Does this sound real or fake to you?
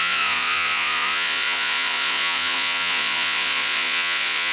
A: fake